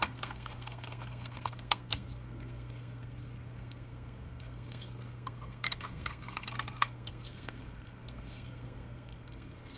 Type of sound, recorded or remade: remade